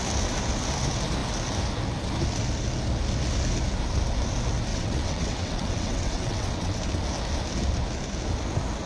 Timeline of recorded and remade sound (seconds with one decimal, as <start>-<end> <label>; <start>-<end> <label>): 0.0-4.7 recorded; 4.7-6.8 remade; 6.8-8.9 recorded